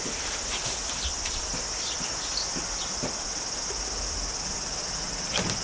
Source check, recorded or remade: recorded